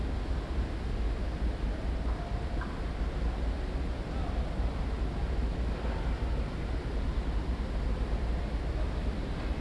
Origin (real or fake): real